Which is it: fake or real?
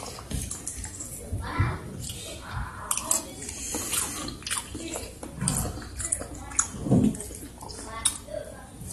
real